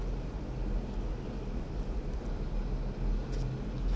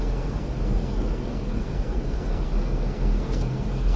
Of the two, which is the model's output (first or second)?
second